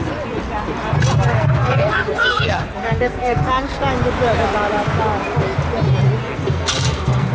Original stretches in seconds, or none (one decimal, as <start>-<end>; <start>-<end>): 0.0-1.3; 3.8-6.2